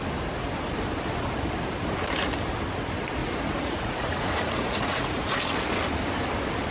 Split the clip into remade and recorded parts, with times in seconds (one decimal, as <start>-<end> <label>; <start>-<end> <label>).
0.0-3.2 recorded; 3.2-5.4 remade; 5.4-6.7 recorded